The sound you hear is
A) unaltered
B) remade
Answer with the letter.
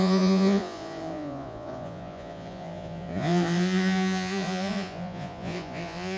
B